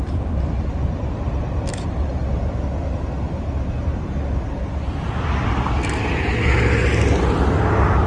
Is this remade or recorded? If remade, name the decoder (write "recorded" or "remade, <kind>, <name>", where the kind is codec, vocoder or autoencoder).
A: recorded